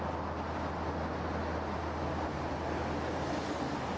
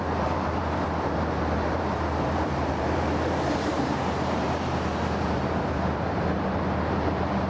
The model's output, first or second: second